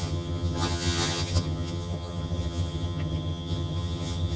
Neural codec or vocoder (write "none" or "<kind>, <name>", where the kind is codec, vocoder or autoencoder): vocoder, HiFi-GAN